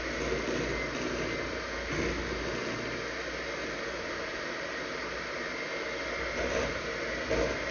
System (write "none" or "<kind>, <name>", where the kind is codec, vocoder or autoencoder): none